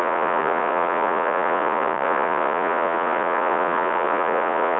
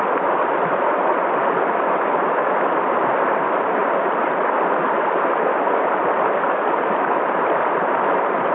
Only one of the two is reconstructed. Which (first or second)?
first